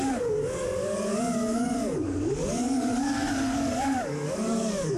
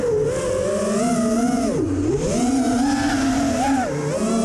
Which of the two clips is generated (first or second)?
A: first